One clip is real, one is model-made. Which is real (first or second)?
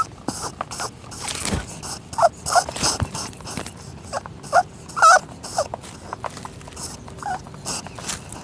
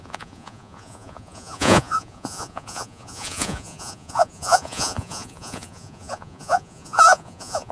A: first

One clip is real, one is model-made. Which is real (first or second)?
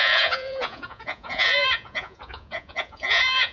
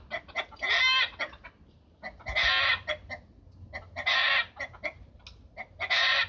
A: second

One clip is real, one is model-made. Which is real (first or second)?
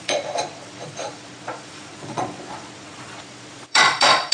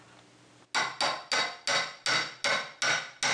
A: second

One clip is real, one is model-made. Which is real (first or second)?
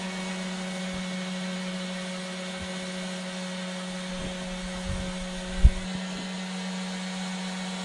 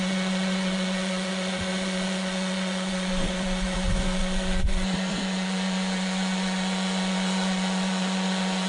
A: first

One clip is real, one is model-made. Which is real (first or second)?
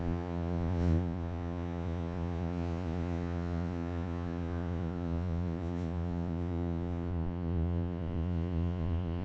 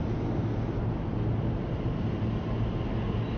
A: second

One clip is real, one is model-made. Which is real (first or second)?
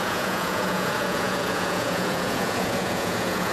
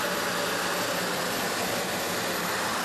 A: second